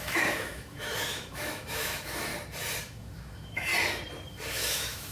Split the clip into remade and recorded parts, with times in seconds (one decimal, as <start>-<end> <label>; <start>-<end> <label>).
0.0-2.3 remade; 2.3-2.8 recorded; 2.8-3.7 remade; 3.7-4.5 recorded; 4.5-5.1 remade